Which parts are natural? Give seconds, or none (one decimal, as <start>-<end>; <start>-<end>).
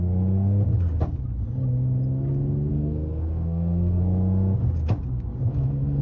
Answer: 0.0-2.7; 4.0-5.5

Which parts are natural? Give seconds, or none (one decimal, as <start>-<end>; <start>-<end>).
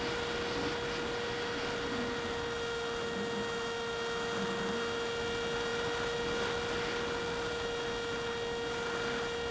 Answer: 0.0-9.5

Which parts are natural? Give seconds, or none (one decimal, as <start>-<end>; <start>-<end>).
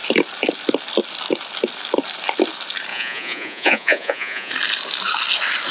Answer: 0.0-2.9; 4.5-5.7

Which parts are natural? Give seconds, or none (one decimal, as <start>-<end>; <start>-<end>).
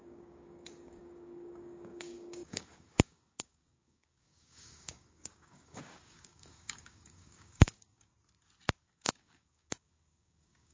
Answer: 8.1-8.8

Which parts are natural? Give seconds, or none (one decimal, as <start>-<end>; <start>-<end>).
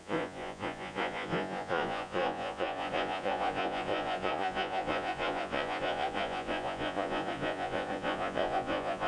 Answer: none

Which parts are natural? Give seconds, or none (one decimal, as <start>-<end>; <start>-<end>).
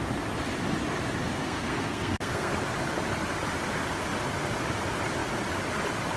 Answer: 0.0-1.3; 2.5-6.2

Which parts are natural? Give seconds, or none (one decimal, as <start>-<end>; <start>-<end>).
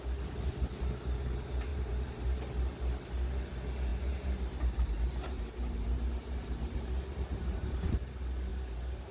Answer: 0.0-1.7; 2.4-3.9; 7.8-8.5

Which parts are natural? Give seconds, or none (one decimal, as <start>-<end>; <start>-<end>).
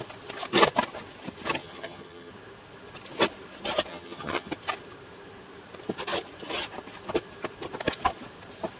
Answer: 0.0-1.6; 2.3-3.9; 4.5-8.8